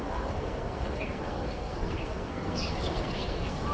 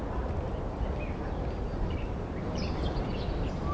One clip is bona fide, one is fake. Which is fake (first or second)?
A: first